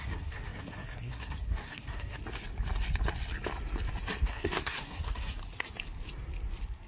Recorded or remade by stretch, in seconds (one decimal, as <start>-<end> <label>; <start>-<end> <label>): 0.0-2.2 remade; 2.2-4.2 recorded; 4.2-5.4 remade; 5.4-6.9 recorded